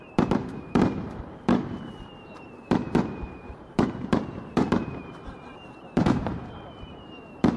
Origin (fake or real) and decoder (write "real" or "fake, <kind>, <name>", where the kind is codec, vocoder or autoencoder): fake, vocoder, BigVGAN v2